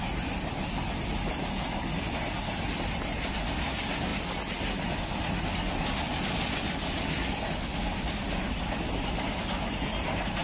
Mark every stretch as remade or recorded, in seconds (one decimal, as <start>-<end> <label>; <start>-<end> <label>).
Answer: 0.0-10.4 recorded